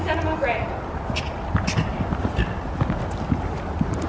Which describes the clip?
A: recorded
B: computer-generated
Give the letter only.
A